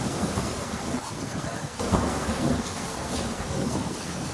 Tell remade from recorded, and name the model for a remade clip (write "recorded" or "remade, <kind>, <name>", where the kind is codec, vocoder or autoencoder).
remade, codec, SNAC